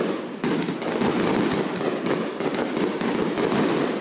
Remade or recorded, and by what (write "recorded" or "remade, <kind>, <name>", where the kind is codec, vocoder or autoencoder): recorded